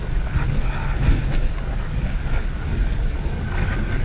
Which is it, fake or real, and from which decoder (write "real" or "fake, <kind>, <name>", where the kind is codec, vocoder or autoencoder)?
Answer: fake, codec, DAC